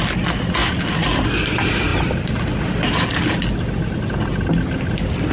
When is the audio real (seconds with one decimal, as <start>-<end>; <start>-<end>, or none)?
0.0-5.3